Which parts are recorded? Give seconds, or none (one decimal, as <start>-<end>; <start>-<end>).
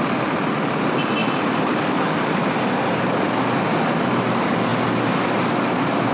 0.0-6.1